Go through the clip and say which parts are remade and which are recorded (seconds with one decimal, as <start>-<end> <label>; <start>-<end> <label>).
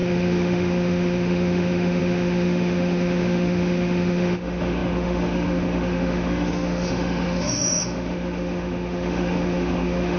0.0-10.2 remade